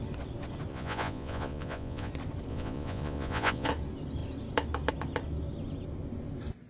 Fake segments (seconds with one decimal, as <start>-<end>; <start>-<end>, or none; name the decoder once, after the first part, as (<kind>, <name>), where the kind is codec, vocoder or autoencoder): 0.7-2.1 (vocoder, Vocos); 2.5-3.7